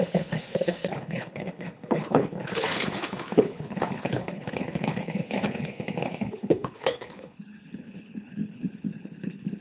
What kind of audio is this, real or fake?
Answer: fake